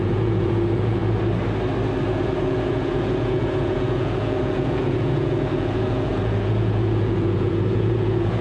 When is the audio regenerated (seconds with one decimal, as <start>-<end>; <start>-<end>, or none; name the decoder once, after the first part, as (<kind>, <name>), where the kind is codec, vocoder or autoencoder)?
0.0-1.0 (vocoder, Vocos); 2.0-8.4